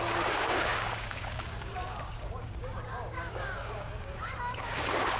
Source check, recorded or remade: remade